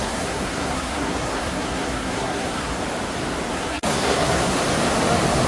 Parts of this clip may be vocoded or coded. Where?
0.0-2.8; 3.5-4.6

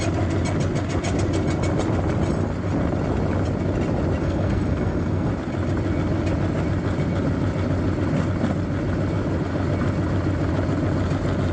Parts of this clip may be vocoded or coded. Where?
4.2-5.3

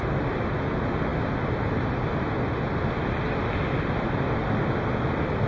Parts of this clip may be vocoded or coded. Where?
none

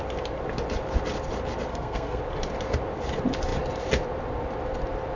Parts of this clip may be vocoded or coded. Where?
1.7-2.2

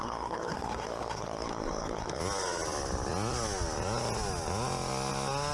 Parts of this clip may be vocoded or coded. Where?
0.0-2.2